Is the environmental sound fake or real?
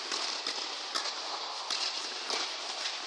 real